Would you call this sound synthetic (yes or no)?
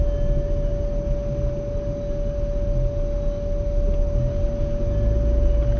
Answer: no